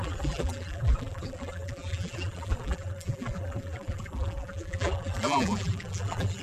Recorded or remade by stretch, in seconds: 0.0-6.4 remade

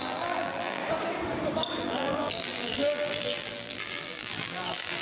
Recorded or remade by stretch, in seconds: 0.0-0.8 remade; 0.8-1.8 recorded; 1.8-5.0 remade

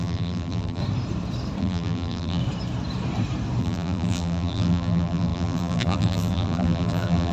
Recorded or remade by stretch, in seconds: 0.0-0.8 remade; 0.8-1.6 recorded; 1.6-2.4 remade; 2.4-3.6 recorded; 3.6-7.3 remade

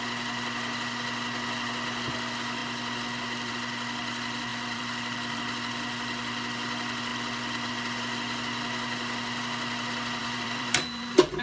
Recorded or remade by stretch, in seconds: 0.0-4.5 recorded; 4.5-5.4 remade; 5.4-7.1 recorded; 7.1-7.7 remade; 7.7-10.2 recorded; 10.2-11.4 remade

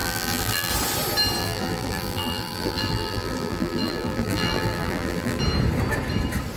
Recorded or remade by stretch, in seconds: 0.0-0.7 remade; 0.7-1.4 recorded; 1.4-5.4 remade; 5.4-6.6 recorded

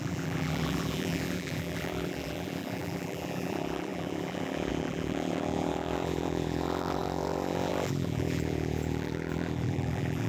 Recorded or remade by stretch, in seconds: 0.0-10.3 remade

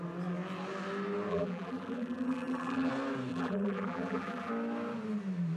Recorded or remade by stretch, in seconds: 0.0-1.3 recorded; 1.3-2.9 remade; 2.9-3.3 recorded; 3.3-4.5 remade; 4.5-5.6 recorded

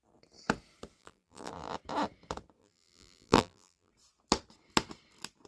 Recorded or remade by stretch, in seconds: 0.0-1.0 recorded; 1.0-1.5 remade; 1.5-2.6 recorded; 2.6-3.9 remade; 3.9-5.5 recorded